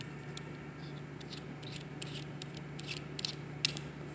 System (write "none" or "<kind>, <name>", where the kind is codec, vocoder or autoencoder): none